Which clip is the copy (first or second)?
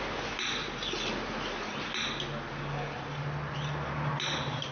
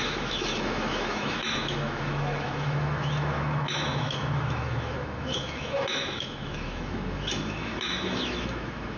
second